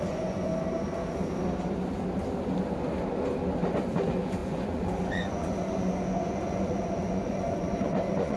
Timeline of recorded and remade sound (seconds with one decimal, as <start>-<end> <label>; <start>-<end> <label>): 0.0-0.5 remade; 0.5-3.8 recorded; 3.8-8.4 remade